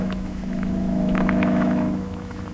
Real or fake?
fake